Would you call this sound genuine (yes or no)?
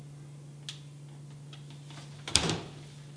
yes